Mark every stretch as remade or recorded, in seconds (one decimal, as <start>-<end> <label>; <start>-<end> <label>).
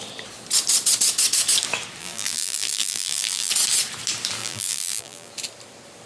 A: 0.0-2.0 recorded; 2.0-3.5 remade; 3.5-4.4 recorded; 4.4-5.3 remade; 5.3-6.1 recorded